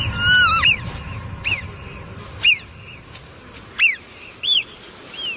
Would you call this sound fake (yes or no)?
no